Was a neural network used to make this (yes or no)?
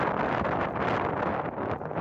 no